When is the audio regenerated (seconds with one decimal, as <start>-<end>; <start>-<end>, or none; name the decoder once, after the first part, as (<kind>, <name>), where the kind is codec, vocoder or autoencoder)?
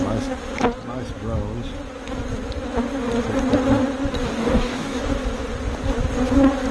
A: 4.4-5.0 (codec, DAC)